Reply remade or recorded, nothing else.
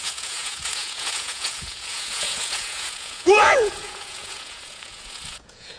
remade